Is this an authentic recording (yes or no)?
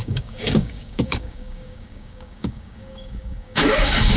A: no